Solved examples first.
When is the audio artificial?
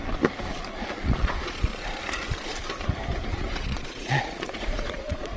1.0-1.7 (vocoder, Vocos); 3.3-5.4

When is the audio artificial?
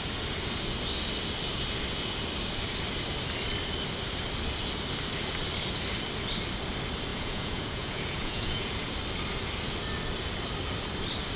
7.1-8.9 (vocoder, Vocos)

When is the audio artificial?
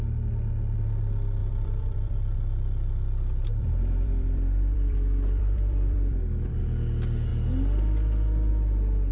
1.4-6.6 (vocoder, BigVGAN v2)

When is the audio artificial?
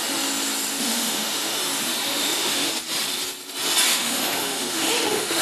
0.7-1.6 (autoencoder, DAC-VAE); 2.1-2.7; 3.9-5.4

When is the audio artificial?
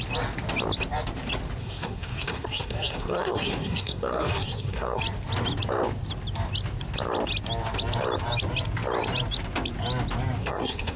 1.6-5.0 (codec, SNAC); 10.4-11.0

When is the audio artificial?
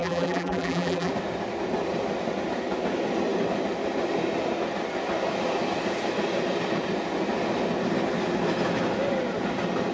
0.0-1.1 (vocoder, BigVGAN v2)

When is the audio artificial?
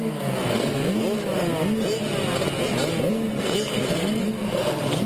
0.0-0.8 (codec, SNAC); 3.1-5.1